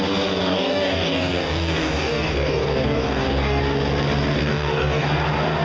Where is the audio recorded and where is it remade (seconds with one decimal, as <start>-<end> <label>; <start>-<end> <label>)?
0.0-0.4 recorded; 0.4-3.6 remade; 3.6-4.4 recorded; 4.4-5.1 remade; 5.1-5.6 recorded